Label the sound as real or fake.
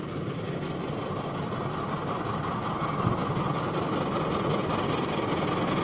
real